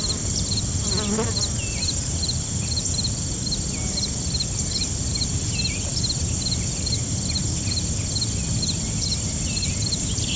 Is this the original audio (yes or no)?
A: yes